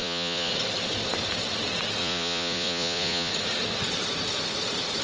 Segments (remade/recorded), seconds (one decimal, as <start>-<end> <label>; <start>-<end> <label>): 0.0-0.5 remade; 0.5-2.0 recorded; 2.0-3.3 remade; 3.3-5.0 recorded